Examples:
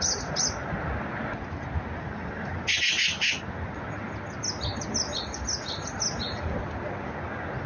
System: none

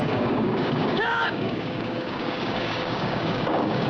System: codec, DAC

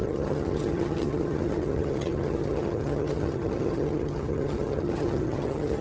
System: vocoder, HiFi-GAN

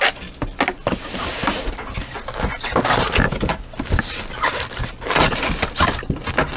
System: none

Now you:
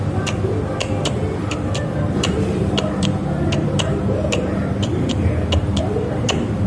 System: vocoder, BigVGAN v2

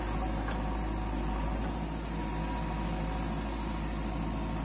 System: none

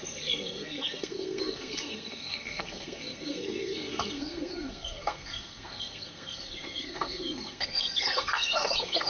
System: codec, SNAC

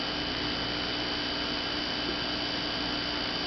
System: none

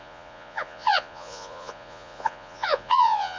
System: vocoder, Vocos